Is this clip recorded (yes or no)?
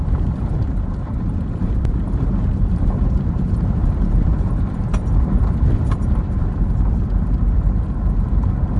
no